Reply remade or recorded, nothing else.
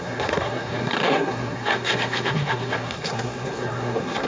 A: remade